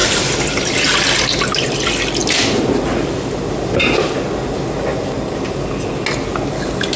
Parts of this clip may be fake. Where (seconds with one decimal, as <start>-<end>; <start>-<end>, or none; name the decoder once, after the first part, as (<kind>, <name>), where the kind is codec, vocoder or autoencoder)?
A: none